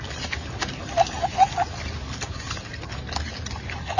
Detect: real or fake real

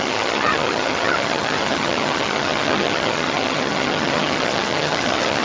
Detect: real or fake fake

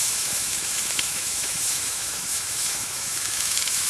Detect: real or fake fake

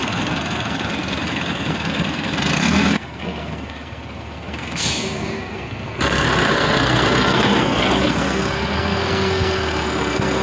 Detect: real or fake fake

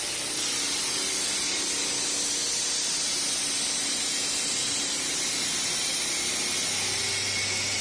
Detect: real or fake real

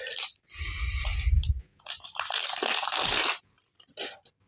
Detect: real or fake real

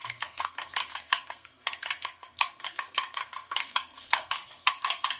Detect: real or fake fake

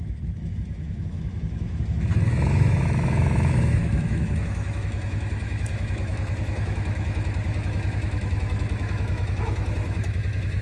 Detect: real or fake fake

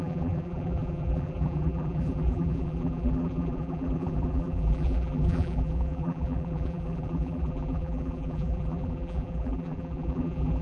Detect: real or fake fake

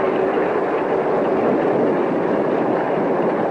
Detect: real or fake real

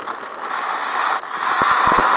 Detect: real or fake real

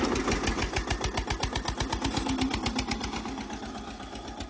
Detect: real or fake real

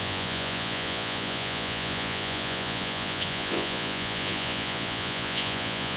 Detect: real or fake fake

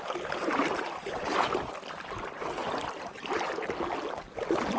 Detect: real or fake real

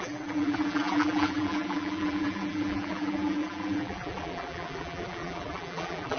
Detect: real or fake fake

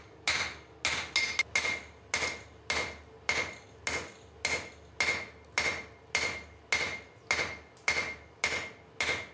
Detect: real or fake real